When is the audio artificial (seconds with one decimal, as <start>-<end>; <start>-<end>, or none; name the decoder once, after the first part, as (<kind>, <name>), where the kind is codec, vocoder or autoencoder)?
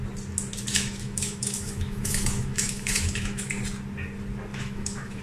0.7-3.5 (autoencoder, DAC-VAE); 4.5-5.2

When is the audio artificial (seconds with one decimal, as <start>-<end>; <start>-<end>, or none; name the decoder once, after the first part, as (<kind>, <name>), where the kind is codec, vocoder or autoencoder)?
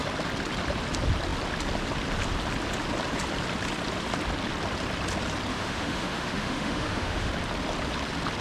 5.5-7.3 (autoencoder, DAC-VAE)